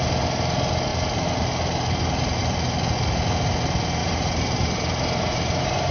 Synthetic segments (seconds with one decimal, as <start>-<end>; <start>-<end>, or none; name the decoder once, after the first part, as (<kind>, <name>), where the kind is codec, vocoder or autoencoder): 4.0-5.9 (vocoder, BigVGAN v2)